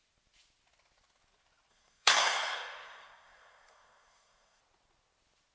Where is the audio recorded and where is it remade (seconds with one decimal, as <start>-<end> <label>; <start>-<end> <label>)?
0.0-1.7 recorded; 1.7-4.6 remade; 4.6-5.5 recorded